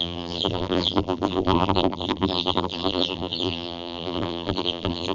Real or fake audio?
fake